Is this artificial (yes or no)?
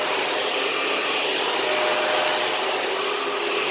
no